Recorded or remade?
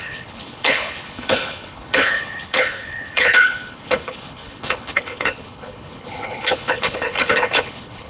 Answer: remade